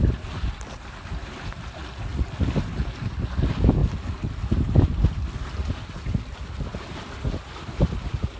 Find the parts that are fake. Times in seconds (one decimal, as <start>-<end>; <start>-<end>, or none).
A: none